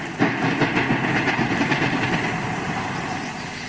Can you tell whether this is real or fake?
real